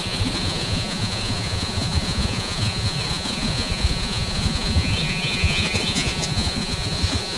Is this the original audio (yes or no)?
no